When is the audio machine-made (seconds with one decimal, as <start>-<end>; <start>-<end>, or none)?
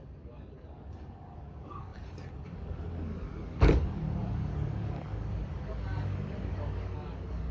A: 0.0-7.5